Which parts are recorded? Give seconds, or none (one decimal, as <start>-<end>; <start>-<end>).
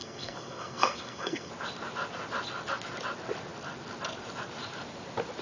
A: 1.5-5.4